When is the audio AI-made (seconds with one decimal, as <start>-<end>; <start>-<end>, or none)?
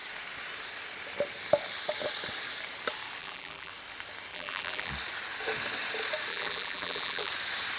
3.2-3.7; 4.3-4.9; 6.3-7.3